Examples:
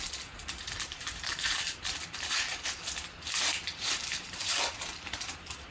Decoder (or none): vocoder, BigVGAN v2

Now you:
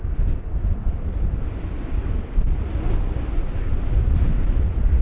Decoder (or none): none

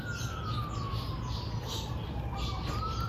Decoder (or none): none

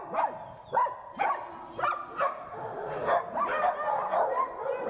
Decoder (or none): none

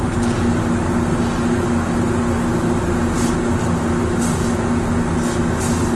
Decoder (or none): none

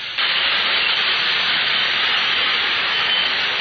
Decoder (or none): vocoder, BigVGAN v2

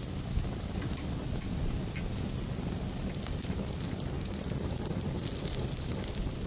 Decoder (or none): none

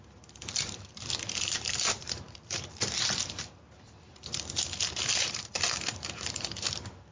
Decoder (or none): vocoder, BigVGAN v2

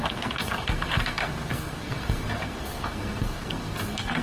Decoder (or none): codec, SNAC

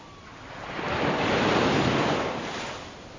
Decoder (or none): none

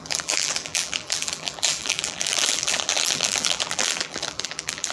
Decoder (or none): vocoder, BigVGAN v2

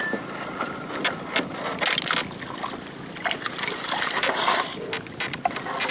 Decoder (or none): none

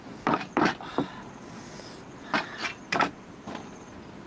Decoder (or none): none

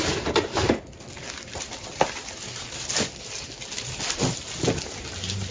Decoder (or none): none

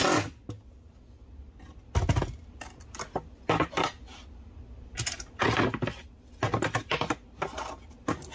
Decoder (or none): none